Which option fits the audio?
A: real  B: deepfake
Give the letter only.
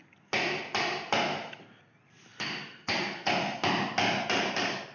A